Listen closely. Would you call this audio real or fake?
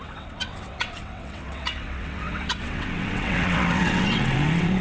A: fake